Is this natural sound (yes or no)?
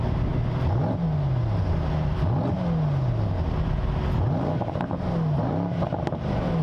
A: yes